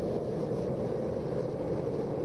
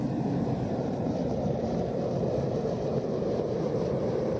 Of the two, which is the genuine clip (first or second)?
first